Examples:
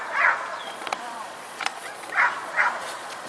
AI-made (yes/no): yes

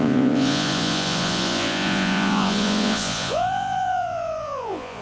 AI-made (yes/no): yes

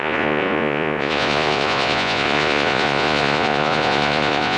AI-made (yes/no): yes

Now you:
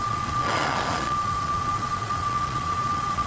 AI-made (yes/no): yes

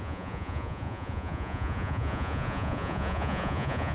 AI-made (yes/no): yes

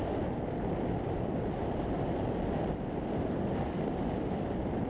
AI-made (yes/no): no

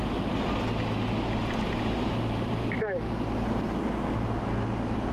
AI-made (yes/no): no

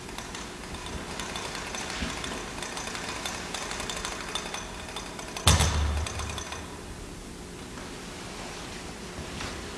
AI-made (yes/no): no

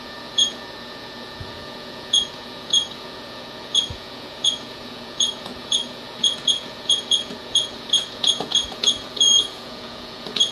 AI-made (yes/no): yes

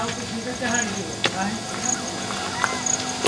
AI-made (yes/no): no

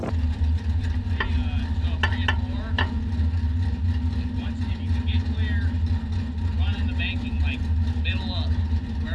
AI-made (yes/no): no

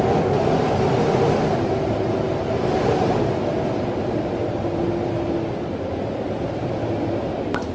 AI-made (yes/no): no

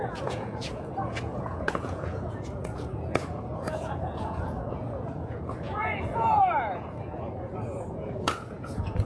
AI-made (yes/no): yes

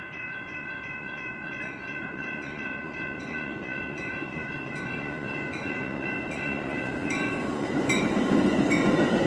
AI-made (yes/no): yes